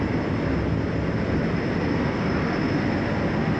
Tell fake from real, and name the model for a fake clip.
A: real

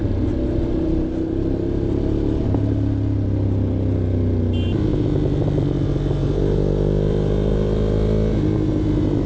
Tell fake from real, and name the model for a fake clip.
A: real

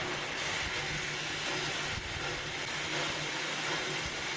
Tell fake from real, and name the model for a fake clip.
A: real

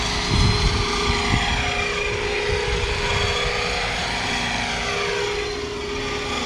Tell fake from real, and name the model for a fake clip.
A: real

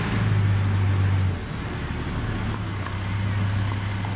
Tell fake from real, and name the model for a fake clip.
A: real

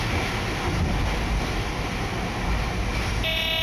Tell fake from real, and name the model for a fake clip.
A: real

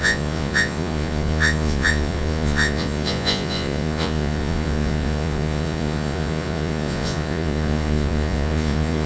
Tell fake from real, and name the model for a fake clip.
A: fake, vocoder, Vocos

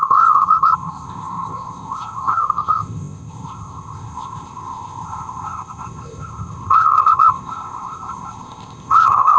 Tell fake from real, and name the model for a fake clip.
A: fake, codec, ZipCodec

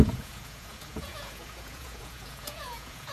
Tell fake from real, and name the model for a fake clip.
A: fake, vocoder, Vocos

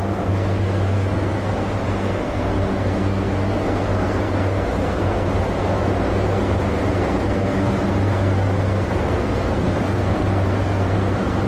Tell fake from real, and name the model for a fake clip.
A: fake, codec, SNAC